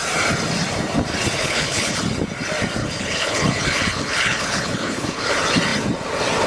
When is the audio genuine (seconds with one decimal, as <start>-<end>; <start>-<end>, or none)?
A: 0.0-1.4; 2.0-2.8; 5.3-6.5